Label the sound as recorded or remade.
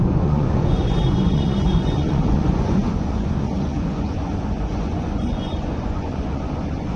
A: remade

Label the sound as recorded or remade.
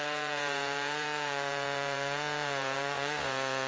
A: remade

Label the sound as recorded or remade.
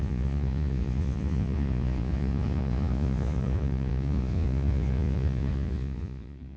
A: remade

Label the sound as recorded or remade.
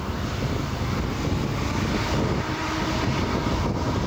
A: recorded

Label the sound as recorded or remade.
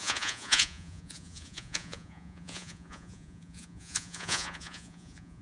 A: remade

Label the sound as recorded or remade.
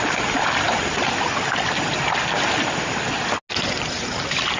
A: recorded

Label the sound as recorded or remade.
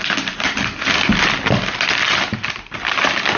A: recorded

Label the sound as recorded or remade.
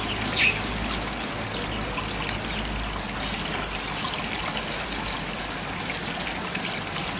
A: recorded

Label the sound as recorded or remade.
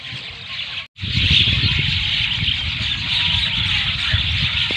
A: recorded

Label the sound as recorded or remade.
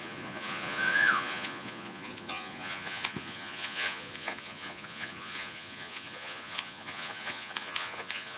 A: remade